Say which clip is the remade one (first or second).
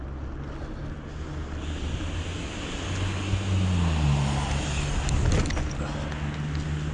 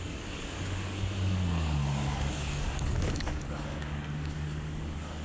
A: second